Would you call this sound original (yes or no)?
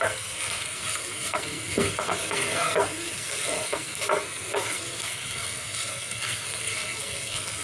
no